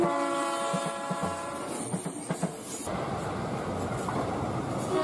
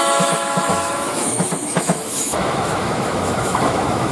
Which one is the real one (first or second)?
first